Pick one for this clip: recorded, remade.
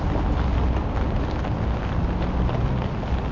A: recorded